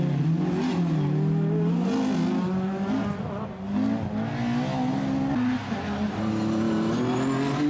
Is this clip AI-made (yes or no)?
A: no